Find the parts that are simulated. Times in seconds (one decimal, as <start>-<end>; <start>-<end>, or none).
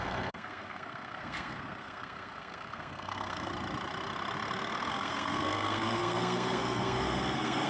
0.0-3.5; 4.9-7.7